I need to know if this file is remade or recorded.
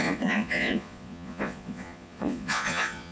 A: remade